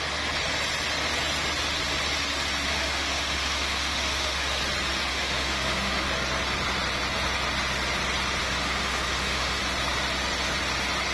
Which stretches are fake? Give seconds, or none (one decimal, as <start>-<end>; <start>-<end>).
2.7-4.6; 5.1-6.1; 8.4-9.6